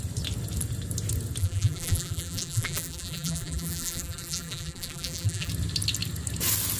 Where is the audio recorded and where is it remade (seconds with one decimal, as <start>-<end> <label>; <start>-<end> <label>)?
0.0-1.4 recorded; 1.4-5.5 remade; 5.5-6.8 recorded